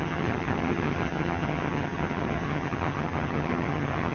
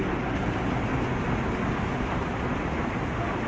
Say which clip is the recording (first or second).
second